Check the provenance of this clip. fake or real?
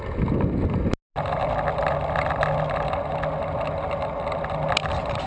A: real